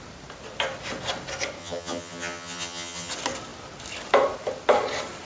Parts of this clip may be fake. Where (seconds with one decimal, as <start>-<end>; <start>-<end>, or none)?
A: 1.6-3.1